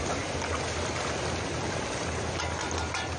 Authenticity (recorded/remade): recorded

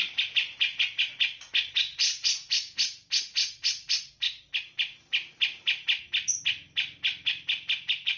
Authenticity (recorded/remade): recorded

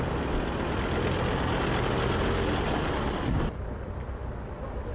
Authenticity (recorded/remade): recorded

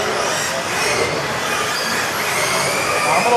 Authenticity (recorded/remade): recorded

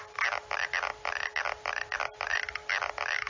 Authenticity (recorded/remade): recorded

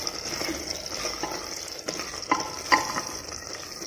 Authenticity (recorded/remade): recorded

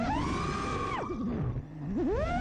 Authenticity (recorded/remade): recorded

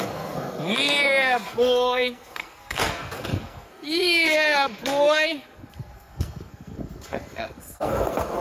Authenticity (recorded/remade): remade